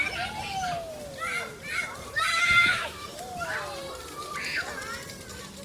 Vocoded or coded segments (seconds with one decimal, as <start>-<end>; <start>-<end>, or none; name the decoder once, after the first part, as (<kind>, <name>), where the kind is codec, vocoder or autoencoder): 2.3-3.2 (autoencoder, DAC-VAE)